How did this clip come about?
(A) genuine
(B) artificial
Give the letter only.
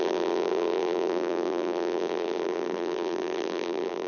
B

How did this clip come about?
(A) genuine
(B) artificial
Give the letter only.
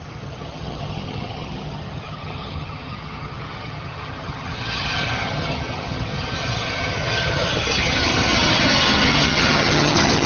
B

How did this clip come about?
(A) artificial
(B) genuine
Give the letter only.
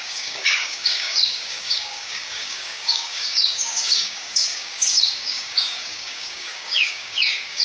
A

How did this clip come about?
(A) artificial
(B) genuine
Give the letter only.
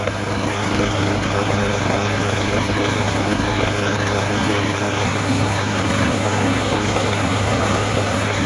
A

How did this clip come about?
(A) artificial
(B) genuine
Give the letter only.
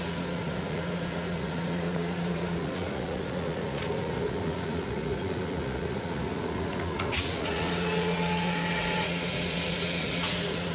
A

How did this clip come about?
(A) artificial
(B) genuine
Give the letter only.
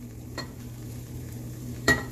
A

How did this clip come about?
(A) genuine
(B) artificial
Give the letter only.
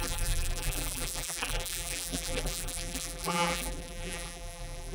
B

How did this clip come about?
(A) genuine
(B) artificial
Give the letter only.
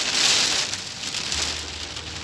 A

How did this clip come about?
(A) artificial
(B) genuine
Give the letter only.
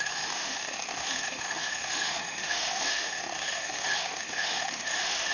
A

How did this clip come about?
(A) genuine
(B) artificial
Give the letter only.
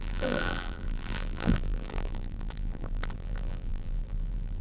B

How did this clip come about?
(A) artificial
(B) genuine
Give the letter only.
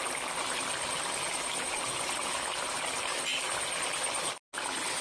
B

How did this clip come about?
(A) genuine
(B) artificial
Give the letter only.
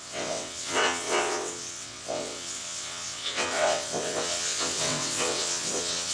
B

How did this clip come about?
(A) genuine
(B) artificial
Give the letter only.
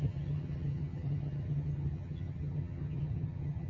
B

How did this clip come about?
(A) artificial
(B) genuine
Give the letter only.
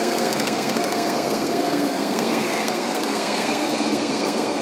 A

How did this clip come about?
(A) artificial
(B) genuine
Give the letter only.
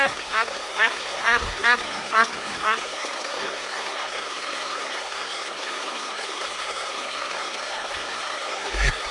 A